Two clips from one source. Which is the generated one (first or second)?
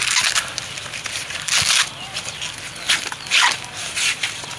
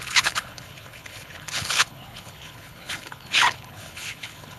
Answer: second